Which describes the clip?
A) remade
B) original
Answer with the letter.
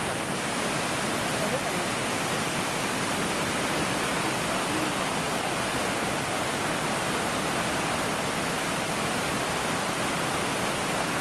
B